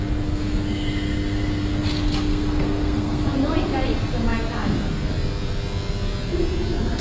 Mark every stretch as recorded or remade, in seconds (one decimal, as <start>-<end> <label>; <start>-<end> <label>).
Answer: 0.0-2.3 recorded; 2.3-3.2 remade; 3.2-7.0 recorded